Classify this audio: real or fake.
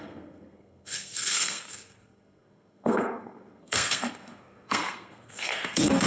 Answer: fake